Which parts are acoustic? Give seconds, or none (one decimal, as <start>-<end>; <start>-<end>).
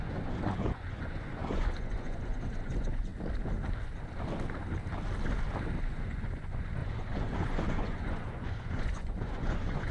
3.1-5.8